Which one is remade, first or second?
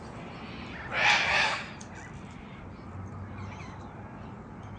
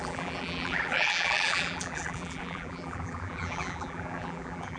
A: second